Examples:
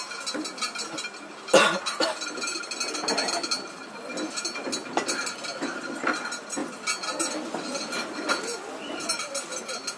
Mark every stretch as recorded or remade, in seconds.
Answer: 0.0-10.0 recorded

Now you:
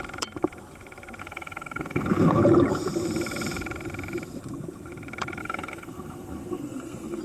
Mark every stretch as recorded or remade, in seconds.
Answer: 0.0-1.2 recorded; 1.2-2.4 remade; 2.4-5.4 recorded; 5.4-7.2 remade

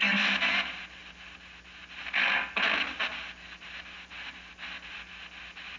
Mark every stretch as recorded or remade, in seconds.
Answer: 0.0-5.8 recorded

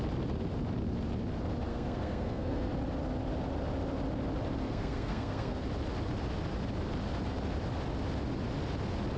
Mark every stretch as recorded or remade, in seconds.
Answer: 0.0-1.7 recorded; 1.7-2.7 remade; 2.7-4.6 recorded; 4.6-5.6 remade; 5.6-9.2 recorded

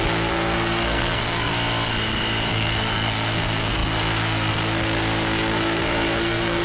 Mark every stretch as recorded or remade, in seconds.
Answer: 0.0-1.5 remade; 1.5-2.5 recorded; 2.5-6.6 remade

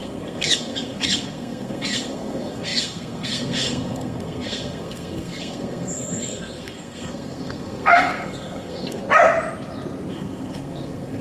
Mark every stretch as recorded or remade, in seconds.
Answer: 0.0-9.0 remade; 9.0-10.1 recorded; 10.1-11.2 remade